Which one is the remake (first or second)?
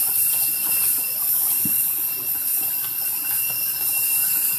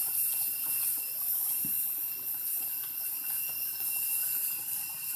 first